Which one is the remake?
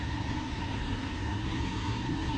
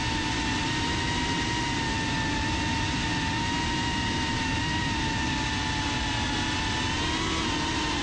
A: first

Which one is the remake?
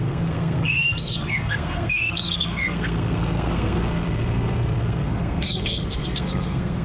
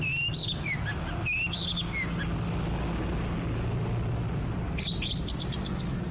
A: first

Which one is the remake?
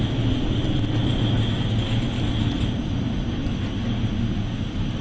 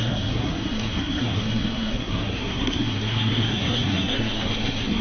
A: second